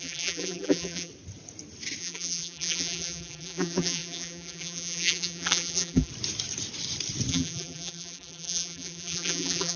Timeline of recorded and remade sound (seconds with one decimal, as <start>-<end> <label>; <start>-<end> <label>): 0.0-1.1 remade; 1.1-2.0 recorded; 2.0-6.1 remade; 6.1-7.3 recorded; 7.3-9.8 remade